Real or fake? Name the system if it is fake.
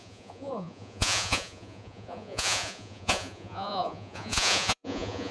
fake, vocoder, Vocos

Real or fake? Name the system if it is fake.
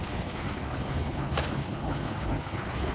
fake, codec, HILCodec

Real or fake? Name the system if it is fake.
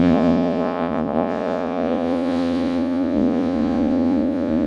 fake, vocoder, Vocos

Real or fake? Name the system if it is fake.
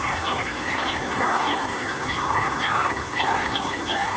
fake, codec, SNAC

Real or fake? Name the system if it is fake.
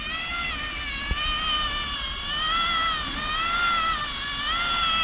real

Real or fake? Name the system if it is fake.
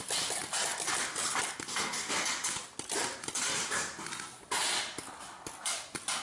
real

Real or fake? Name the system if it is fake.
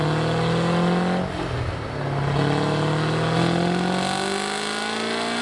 real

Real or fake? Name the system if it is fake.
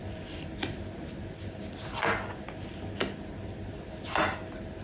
real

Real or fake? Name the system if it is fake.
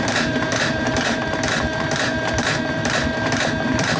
fake, vocoder, BigVGAN v2